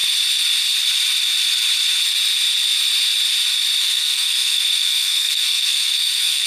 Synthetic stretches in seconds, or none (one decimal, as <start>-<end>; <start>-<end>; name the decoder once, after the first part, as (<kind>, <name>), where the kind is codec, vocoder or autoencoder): 3.8-6.5 (codec, SNAC)